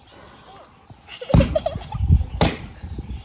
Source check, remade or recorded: recorded